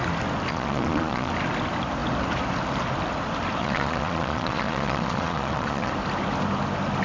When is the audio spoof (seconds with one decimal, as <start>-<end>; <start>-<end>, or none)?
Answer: 0.5-1.3; 3.6-5.9